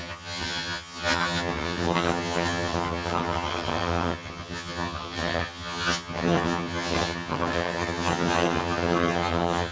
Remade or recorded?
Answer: remade